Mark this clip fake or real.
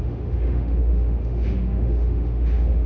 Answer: fake